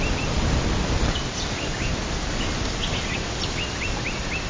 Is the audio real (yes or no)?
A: yes